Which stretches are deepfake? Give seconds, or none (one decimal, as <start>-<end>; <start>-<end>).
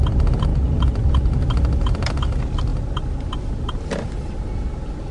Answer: none